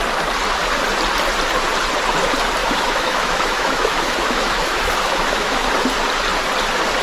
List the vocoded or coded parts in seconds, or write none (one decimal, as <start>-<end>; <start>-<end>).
2.6-5.7